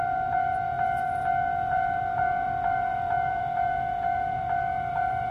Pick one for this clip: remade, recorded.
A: remade